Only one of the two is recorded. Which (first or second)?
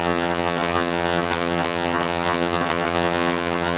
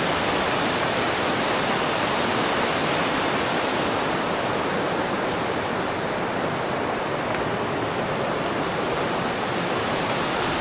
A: second